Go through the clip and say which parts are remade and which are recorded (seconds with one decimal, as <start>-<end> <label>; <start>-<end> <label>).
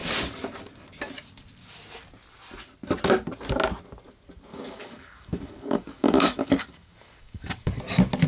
0.0-4.5 recorded; 4.5-7.8 remade; 7.8-8.3 recorded